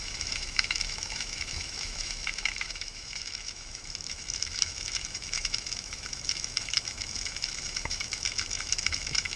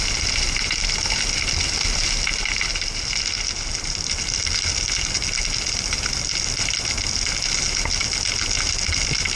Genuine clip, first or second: second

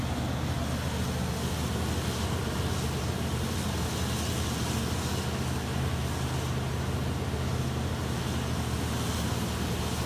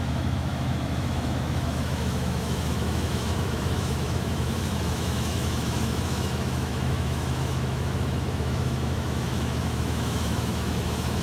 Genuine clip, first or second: first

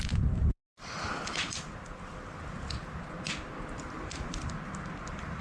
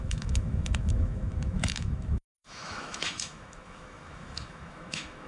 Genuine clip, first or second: first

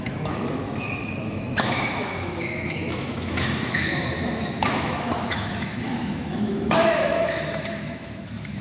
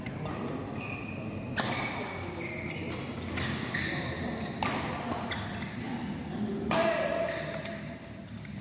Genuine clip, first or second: second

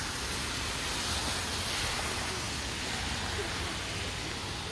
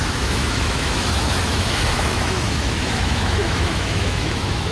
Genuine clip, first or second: first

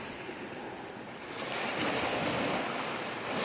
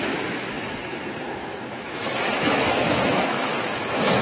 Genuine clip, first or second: first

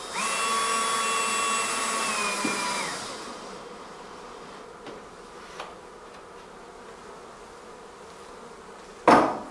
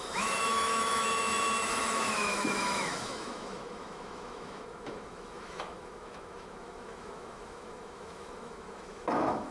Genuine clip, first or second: first